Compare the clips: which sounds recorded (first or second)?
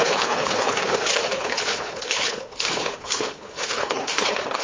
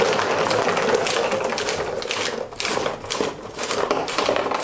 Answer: second